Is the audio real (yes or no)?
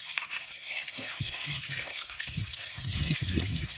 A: no